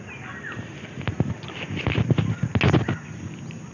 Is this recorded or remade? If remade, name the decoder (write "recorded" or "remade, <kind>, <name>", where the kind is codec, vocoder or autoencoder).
recorded